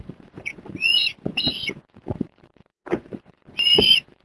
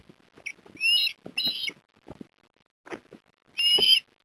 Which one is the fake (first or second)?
first